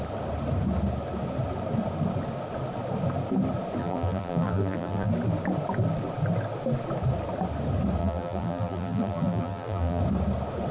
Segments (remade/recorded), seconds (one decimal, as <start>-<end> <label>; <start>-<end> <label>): 0.0-3.8 recorded; 3.8-5.1 remade; 5.1-8.0 recorded; 8.0-10.0 remade; 10.0-10.7 recorded